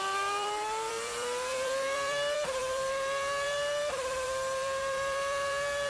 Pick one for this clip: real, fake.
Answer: fake